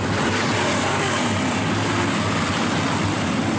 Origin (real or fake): real